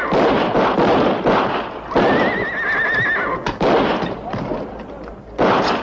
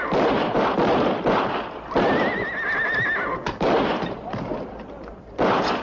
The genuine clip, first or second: first